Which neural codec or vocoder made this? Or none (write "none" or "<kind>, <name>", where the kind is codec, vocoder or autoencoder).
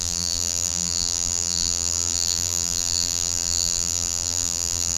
vocoder, BigVGAN v2